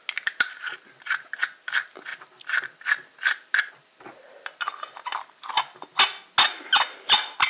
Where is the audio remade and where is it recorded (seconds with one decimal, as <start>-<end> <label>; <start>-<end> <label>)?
0.0-7.5 recorded